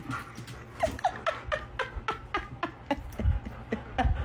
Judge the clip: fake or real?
real